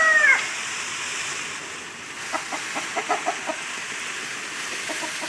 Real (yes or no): yes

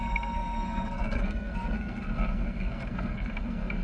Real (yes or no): no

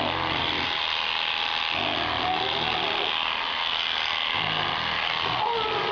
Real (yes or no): yes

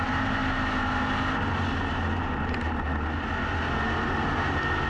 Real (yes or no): yes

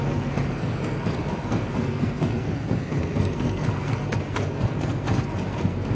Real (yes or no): no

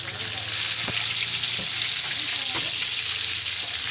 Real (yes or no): yes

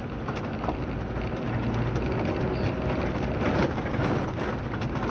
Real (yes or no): yes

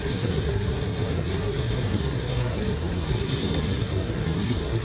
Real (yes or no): no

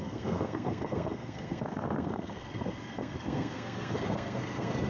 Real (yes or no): no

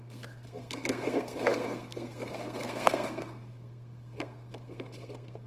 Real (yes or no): no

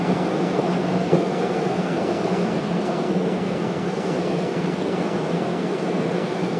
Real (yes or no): no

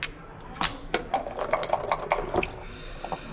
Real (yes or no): yes